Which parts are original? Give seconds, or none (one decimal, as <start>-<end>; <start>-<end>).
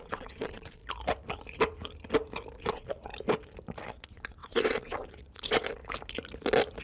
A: 0.8-2.6; 3.1-3.8; 5.8-6.8